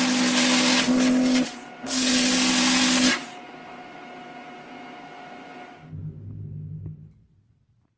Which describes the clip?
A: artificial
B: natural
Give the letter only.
B